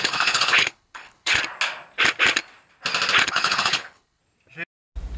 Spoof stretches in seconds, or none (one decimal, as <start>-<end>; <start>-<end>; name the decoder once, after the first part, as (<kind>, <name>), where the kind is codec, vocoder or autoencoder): 0.0-1.4 (codec, HILCodec); 3.2-4.2